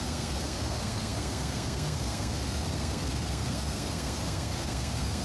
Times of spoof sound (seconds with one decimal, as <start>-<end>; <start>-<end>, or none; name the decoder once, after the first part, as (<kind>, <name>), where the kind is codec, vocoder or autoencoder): 0.0-5.2 (codec, SNAC)